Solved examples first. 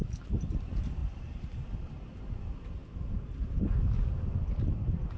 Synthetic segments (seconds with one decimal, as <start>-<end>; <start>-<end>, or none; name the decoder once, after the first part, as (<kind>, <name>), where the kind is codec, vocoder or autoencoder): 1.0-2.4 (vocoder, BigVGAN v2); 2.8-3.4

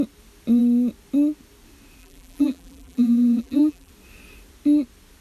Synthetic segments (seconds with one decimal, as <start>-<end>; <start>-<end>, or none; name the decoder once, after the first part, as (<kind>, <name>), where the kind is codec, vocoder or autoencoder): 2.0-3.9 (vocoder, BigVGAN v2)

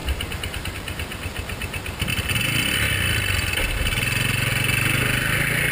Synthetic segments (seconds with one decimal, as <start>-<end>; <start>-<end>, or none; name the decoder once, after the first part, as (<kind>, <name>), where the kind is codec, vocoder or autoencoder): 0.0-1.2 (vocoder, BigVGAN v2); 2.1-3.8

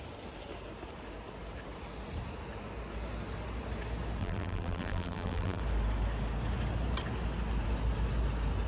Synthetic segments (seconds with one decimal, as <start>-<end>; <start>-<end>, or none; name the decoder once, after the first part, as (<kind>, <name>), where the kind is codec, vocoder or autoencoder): 4.2-5.6 (vocoder, BigVGAN v2)

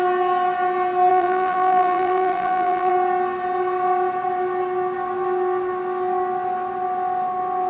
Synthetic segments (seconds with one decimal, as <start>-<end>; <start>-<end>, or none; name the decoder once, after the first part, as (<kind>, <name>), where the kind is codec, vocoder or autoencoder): 1.1-2.9 (vocoder, BigVGAN v2)